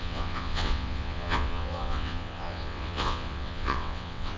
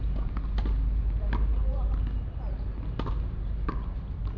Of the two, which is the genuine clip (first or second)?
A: second